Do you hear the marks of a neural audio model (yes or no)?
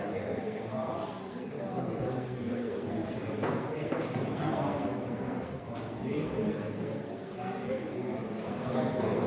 yes